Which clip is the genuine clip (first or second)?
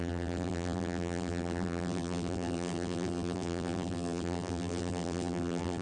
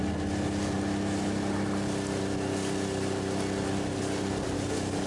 second